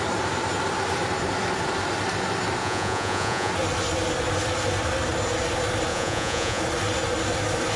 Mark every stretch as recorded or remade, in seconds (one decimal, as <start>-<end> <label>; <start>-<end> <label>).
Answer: 0.0-2.6 recorded; 2.6-3.5 remade; 3.5-5.9 recorded; 5.9-6.6 remade; 6.6-7.8 recorded